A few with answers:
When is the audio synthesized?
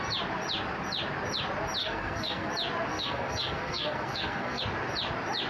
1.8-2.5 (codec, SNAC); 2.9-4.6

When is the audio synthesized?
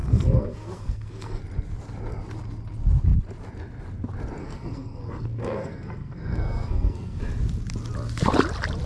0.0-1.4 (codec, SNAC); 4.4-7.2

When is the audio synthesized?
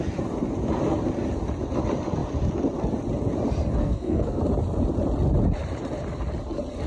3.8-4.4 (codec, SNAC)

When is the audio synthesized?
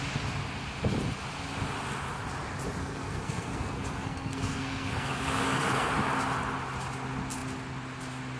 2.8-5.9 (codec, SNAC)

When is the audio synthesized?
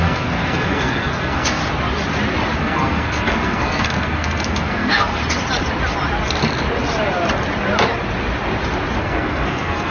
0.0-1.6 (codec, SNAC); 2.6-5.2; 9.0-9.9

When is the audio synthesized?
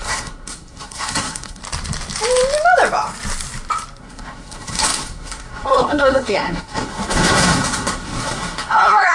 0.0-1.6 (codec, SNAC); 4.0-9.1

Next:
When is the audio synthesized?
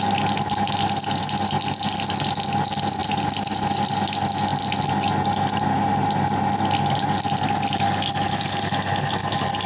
none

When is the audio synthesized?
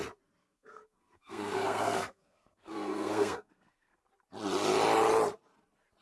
0.4-4.0 (codec, SNAC)